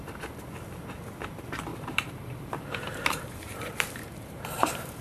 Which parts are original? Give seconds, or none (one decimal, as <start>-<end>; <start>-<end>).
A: 0.0-1.7